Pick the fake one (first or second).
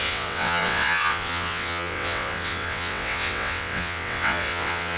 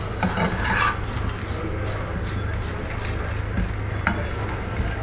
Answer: first